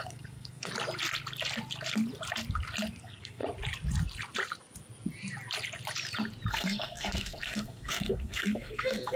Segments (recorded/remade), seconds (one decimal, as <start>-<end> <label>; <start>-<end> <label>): 0.0-0.7 remade; 0.7-3.0 recorded; 3.0-3.4 remade; 3.4-6.5 recorded; 6.5-9.2 remade